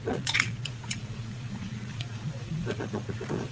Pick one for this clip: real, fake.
fake